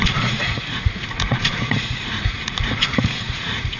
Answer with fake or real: fake